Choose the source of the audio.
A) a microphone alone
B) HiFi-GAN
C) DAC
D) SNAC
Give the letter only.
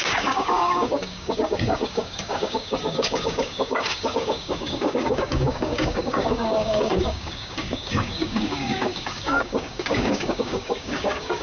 C